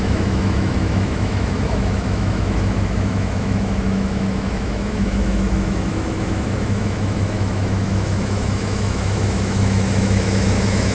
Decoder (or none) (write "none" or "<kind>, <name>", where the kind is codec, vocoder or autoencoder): autoencoder, DAC-VAE